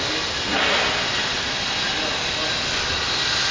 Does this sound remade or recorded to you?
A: recorded